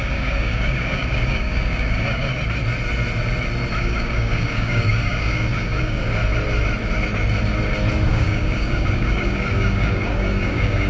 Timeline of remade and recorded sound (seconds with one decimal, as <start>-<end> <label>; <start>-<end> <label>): 0.0-2.3 remade; 2.3-3.8 recorded; 3.8-6.2 remade; 6.2-8.1 recorded; 8.1-10.9 remade